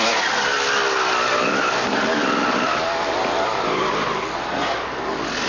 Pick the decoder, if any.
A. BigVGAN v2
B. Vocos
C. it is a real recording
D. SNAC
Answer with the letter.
C